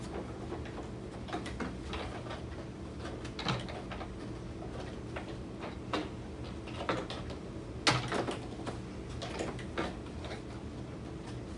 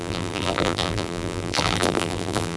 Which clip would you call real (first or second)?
first